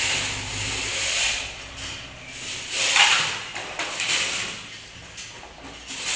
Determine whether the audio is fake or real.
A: real